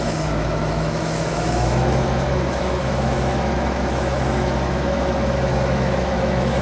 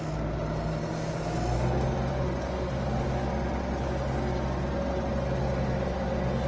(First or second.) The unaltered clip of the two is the second